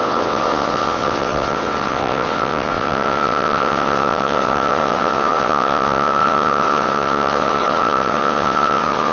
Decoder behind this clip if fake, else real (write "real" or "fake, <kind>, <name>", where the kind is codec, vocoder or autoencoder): fake, vocoder, WaveNeXt